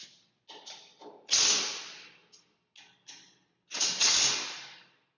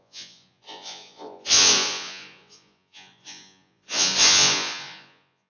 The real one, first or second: first